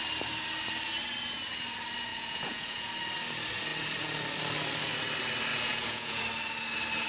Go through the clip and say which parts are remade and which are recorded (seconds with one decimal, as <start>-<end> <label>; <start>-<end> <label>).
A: 0.0-2.1 recorded; 2.1-2.9 remade; 2.9-5.5 recorded; 5.5-6.2 remade; 6.2-7.1 recorded